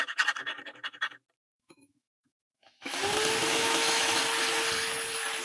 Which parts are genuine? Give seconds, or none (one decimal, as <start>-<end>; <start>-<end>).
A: 0.0-1.5; 3.0-3.4; 4.2-5.4